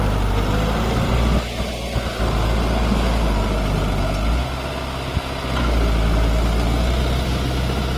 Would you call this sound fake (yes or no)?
no